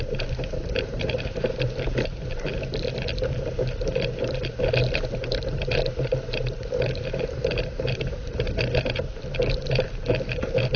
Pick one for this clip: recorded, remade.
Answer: remade